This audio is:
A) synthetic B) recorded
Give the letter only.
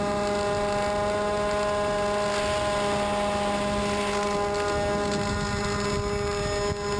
B